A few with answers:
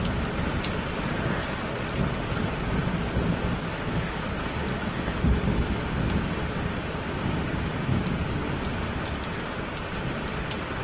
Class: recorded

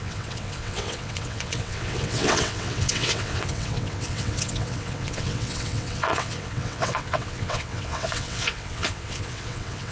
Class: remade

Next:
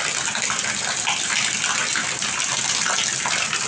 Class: recorded